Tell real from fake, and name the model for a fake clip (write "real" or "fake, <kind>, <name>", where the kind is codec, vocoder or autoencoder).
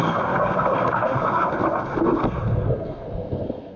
fake, codec, SNAC